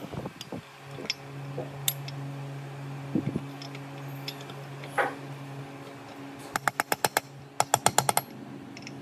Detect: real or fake real